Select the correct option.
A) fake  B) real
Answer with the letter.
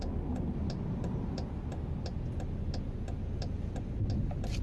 B